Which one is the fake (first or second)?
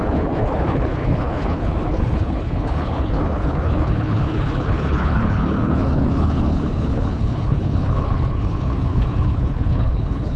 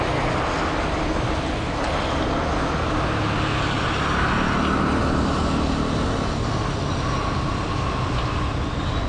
first